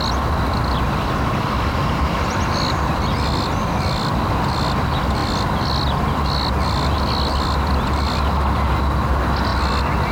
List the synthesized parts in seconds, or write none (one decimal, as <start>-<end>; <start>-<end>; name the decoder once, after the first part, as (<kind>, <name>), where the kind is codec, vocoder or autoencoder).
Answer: none